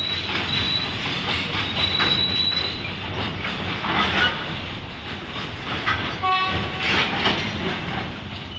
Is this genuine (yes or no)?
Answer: yes